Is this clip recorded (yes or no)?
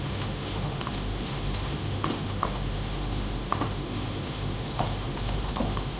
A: no